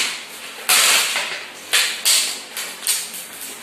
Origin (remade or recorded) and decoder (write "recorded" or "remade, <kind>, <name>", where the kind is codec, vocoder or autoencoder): recorded